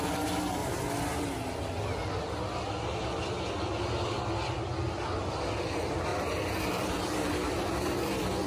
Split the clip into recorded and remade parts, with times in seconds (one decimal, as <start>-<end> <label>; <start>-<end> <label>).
0.0-0.6 remade; 0.6-5.3 recorded; 5.3-8.5 remade